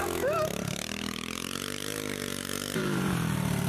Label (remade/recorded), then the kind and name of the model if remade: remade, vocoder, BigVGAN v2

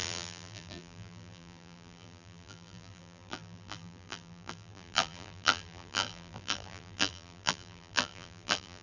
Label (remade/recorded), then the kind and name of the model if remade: remade, vocoder, BigVGAN v2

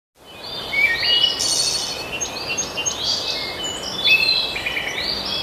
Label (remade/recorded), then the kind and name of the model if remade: recorded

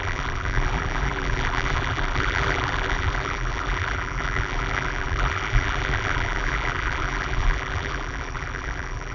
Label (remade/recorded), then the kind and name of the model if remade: remade, vocoder, BigVGAN v2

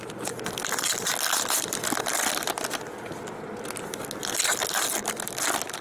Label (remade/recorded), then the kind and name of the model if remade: recorded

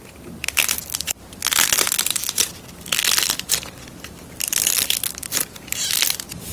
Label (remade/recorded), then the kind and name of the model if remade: recorded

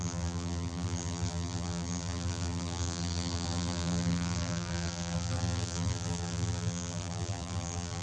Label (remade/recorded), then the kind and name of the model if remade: remade, vocoder, BigVGAN v2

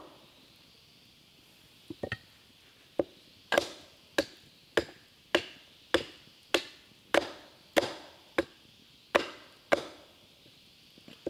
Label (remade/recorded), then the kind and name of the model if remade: recorded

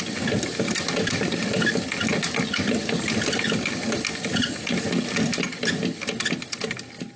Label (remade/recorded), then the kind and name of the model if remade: recorded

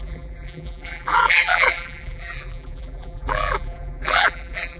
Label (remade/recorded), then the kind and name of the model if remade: remade, vocoder, BigVGAN v2